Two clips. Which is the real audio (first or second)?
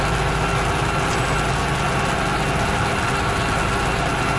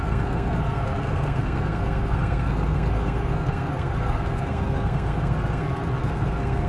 first